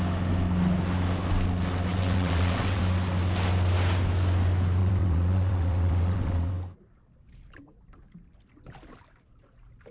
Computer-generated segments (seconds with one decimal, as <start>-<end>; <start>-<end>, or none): 1.9-2.8; 4.8-6.5